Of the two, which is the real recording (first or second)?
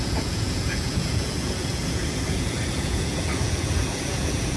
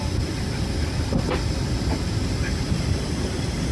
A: second